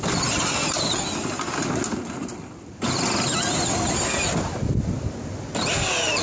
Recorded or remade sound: recorded